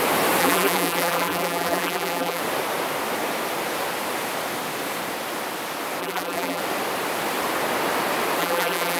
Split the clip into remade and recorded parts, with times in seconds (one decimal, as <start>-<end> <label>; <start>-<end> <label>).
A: 0.0-0.4 recorded; 0.4-2.4 remade; 2.4-6.0 recorded; 6.0-6.6 remade; 6.6-8.4 recorded; 8.4-9.0 remade